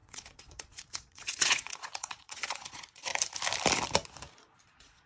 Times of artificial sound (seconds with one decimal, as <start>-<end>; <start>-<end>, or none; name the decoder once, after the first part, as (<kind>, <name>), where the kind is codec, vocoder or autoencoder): 0.0-3.1 (vocoder, Vocos); 4.3-5.1